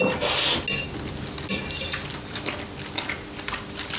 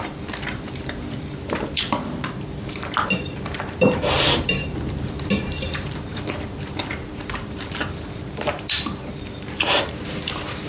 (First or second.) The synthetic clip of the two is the second